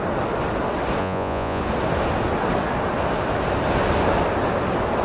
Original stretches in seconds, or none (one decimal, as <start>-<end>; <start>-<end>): 0.0-1.0; 1.6-5.0